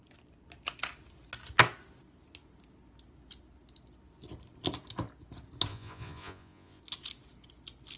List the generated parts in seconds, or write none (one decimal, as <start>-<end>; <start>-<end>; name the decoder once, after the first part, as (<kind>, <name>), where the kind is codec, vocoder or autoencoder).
5.7-6.8 (vocoder, Vocos)